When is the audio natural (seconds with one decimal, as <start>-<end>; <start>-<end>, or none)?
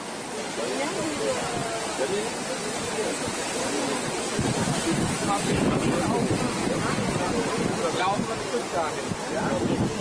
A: 0.0-10.0